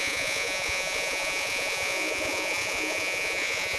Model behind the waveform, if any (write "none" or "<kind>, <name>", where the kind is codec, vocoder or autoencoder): vocoder, Vocos